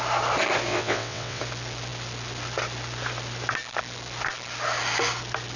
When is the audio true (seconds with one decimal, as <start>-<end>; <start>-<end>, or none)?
0.0-0.7; 1.4-5.6

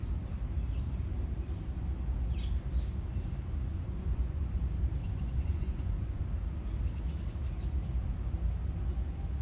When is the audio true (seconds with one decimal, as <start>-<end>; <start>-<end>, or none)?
0.0-3.7; 4.6-5.0; 6.2-9.4

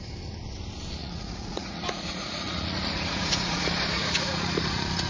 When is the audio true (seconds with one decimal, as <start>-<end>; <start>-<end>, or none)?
0.0-1.0; 3.6-4.0

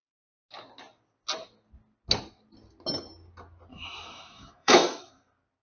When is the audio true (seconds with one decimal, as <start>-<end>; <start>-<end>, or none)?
0.0-3.7; 5.1-5.6

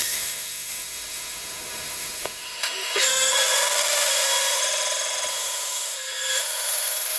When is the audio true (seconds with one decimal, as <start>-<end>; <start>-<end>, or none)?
4.6-5.3

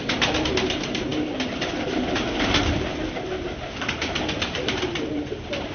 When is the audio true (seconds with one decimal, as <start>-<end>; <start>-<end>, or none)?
0.0-5.7

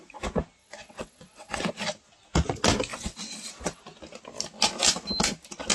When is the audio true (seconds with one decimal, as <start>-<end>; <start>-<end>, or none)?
0.0-0.6; 1.7-2.9; 3.8-5.7